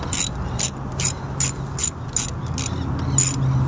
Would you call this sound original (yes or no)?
yes